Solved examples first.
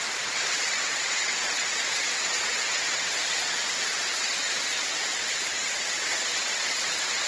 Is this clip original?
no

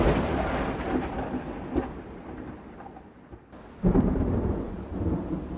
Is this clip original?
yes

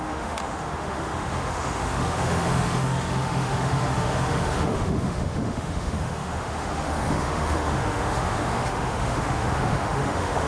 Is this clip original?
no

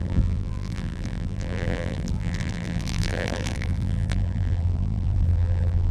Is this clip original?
no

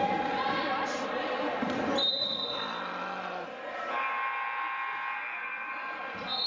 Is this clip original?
yes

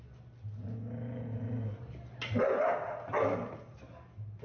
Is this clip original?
yes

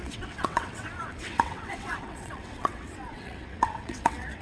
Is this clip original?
no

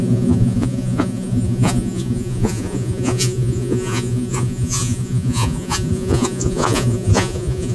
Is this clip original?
no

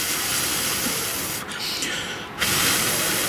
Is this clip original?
yes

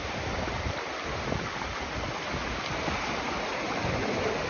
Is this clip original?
yes